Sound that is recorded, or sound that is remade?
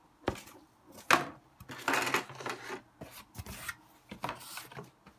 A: recorded